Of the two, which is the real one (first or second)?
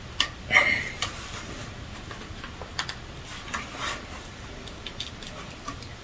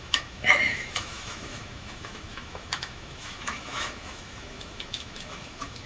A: first